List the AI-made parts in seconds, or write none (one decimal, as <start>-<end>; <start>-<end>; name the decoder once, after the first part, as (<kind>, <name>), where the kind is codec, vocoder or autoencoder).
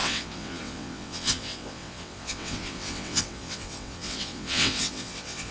0.0-5.5 (vocoder, WaveNeXt)